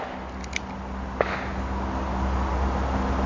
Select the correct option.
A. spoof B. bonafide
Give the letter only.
B